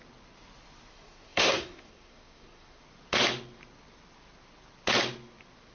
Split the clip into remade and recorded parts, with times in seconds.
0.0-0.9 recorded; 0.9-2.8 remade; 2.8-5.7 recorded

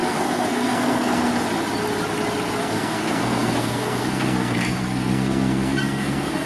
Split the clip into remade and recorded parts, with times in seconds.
0.0-1.3 remade; 1.3-2.6 recorded; 2.6-6.5 remade

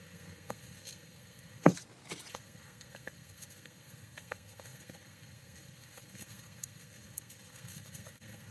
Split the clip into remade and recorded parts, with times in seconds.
0.0-1.7 remade; 1.7-2.3 recorded; 2.3-8.5 remade